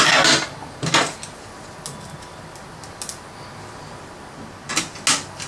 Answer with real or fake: real